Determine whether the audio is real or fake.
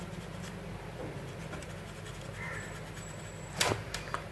real